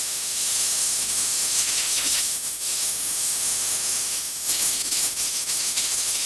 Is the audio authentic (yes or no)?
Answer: no